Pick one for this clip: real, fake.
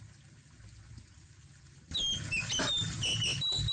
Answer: real